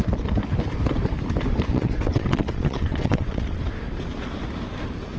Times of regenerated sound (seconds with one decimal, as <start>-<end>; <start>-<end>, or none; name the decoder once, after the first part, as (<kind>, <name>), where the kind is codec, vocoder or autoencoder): 1.7-3.6 (vocoder, WaveNeXt)